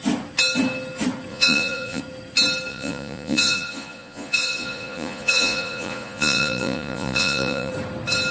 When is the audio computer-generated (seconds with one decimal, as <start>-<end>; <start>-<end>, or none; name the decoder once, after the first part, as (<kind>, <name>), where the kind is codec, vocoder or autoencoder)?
1.3-2.0 (vocoder, Vocos); 2.7-7.7

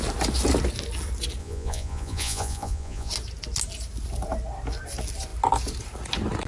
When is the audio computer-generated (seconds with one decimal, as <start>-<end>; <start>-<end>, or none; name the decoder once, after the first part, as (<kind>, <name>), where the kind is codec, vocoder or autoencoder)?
1.4-3.1 (vocoder, Vocos)

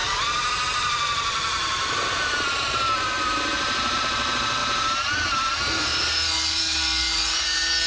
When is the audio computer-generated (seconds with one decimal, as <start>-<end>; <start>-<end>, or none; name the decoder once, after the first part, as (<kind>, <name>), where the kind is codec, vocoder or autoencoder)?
0.0-4.0 (vocoder, BigVGAN v2); 4.6-5.5; 5.9-7.9

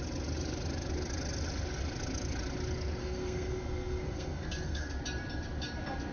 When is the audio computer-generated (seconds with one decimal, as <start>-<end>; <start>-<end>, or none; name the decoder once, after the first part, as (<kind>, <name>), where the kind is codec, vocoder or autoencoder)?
3.0-5.0 (codec, SNAC)